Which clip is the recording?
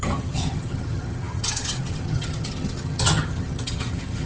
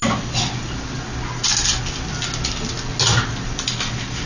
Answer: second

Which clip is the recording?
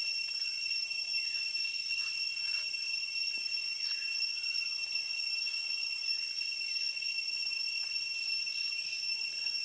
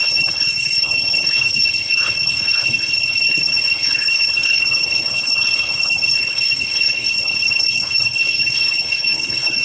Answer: first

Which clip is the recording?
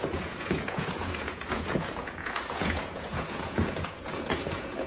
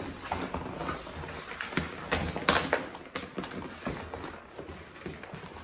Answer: second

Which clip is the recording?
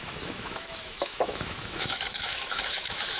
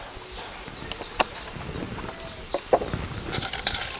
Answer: second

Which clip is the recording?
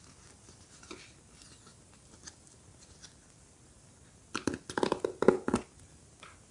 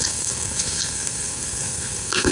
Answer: first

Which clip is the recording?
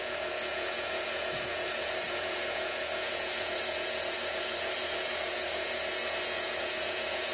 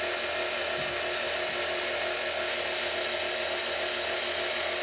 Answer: second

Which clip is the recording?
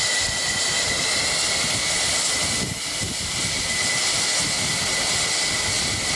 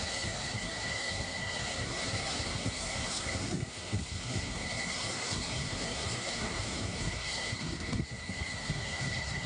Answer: first